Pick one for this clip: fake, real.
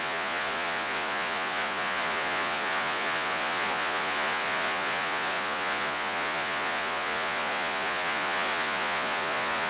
fake